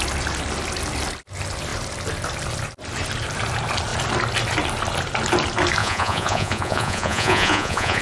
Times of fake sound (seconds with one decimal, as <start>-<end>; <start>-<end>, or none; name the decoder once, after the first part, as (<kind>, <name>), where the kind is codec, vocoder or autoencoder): 5.8-8.0 (vocoder, Vocos)